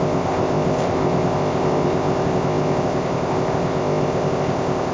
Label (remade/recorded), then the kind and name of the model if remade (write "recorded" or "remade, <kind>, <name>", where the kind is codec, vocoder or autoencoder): remade, codec, ZipCodec